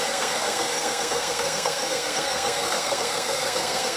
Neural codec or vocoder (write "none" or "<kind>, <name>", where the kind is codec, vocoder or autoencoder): codec, SNAC